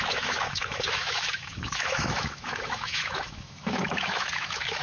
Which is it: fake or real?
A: fake